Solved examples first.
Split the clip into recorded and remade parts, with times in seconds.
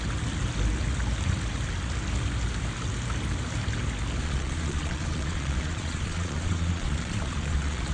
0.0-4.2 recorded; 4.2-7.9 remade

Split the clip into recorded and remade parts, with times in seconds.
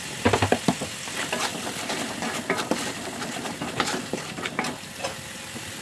0.0-1.5 recorded; 1.5-4.9 remade; 4.9-5.8 recorded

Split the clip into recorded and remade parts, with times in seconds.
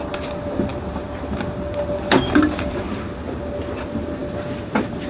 0.0-5.1 recorded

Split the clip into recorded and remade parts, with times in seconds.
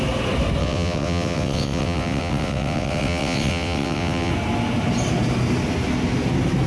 0.0-0.6 recorded; 0.6-4.3 remade; 4.3-6.7 recorded